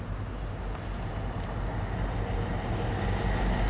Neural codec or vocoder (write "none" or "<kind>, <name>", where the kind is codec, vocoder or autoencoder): none